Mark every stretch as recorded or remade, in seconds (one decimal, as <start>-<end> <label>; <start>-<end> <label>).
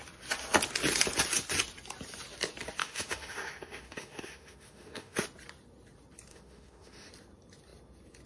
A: 0.0-2.8 recorded; 2.8-5.2 remade; 5.2-6.3 recorded; 6.3-7.1 remade; 7.1-8.3 recorded